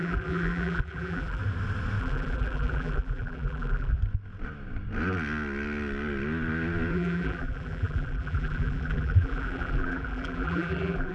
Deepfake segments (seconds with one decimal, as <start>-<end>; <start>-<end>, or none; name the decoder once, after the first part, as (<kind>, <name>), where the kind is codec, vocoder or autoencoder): 0.0-1.4 (vocoder, BigVGAN v2); 2.0-4.0; 6.9-11.1

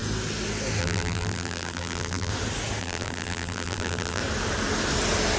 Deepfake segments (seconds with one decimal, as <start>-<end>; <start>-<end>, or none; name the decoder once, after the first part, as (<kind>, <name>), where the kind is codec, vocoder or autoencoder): 0.8-2.3 (vocoder, BigVGAN v2); 2.8-4.2